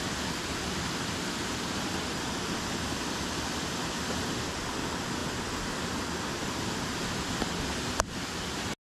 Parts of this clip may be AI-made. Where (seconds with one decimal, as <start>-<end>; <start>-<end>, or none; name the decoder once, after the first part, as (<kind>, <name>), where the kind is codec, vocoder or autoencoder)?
none